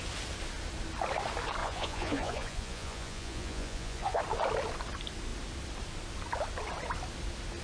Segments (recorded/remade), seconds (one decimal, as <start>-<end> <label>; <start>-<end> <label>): 0.0-1.6 recorded; 1.6-4.2 remade; 4.2-7.6 recorded